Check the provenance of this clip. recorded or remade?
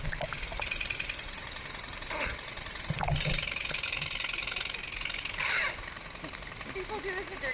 recorded